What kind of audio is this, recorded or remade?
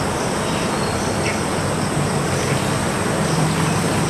remade